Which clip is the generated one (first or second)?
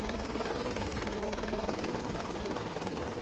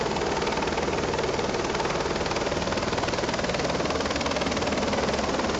first